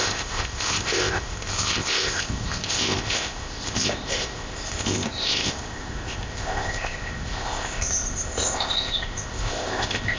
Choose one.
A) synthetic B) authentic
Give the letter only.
A